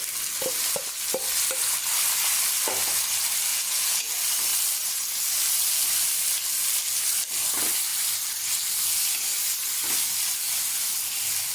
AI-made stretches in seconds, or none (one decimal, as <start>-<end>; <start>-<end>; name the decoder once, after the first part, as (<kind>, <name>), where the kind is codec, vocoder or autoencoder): 3.5-4.1 (vocoder, Vocos)